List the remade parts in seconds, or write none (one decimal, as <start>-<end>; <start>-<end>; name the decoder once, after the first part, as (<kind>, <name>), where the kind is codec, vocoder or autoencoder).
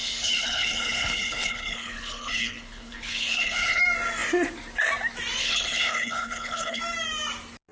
0.0-3.8 (codec, HILCodec); 5.4-6.8